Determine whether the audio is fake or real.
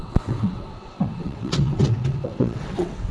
fake